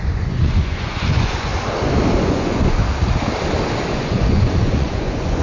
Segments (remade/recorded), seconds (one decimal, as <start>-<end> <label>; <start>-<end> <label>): 0.0-1.5 remade; 1.5-2.2 recorded; 2.2-2.8 remade; 2.8-3.9 recorded; 3.9-5.4 remade